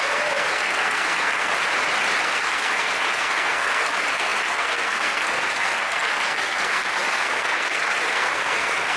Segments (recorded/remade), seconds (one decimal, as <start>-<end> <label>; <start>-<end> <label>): 0.0-1.5 remade; 1.5-2.2 recorded; 2.2-9.0 remade